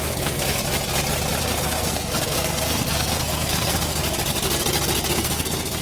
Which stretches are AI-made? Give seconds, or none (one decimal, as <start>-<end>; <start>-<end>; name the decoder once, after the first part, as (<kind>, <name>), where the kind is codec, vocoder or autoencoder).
0.0-0.6 (codec, SNAC); 1.4-4.0; 5.1-5.8